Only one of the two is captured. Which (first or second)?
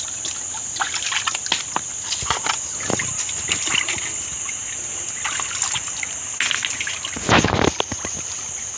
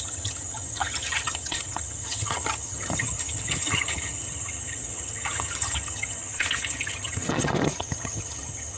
first